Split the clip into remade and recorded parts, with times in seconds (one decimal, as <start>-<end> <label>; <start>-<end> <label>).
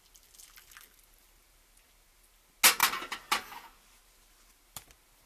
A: 0.0-5.3 recorded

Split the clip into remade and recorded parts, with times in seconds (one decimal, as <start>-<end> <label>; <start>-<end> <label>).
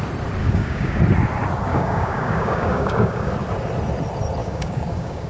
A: 0.0-0.4 recorded; 0.4-1.0 remade; 1.0-1.7 recorded; 1.7-3.3 remade; 3.3-4.4 recorded; 4.4-5.3 remade